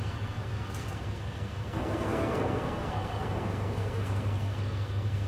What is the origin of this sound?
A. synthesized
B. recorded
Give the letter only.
A